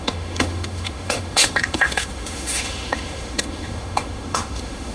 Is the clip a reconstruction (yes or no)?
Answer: yes